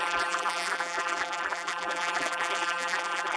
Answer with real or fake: fake